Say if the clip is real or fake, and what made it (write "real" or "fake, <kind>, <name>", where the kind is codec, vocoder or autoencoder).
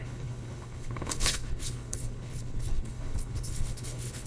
fake, codec, HILCodec